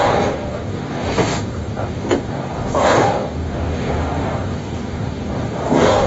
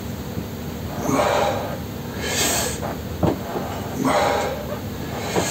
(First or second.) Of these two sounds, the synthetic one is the first